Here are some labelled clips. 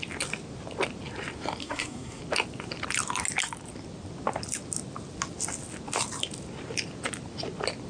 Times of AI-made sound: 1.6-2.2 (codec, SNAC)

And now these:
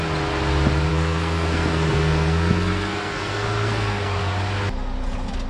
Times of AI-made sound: 0.9-4.2 (codec, SNAC)

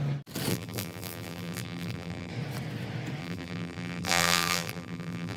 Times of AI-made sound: 0.5-2.3 (vocoder, BigVGAN v2); 3.2-5.4

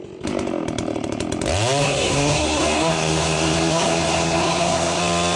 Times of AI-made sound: 1.8-5.0 (codec, SNAC)

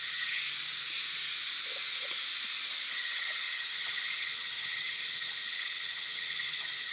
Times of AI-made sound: 0.0-0.4 (vocoder, HiFi-GAN); 2.9-6.9

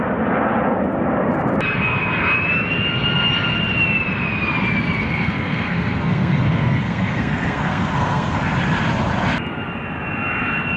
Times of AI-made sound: 5.0-8.4 (codec, SNAC)

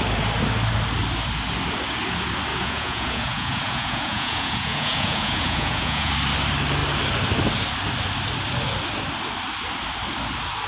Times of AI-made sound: 2.5-6.1 (vocoder, Vocos)